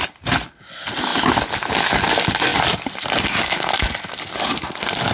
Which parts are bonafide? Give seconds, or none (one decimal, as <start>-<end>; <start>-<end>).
0.0-5.1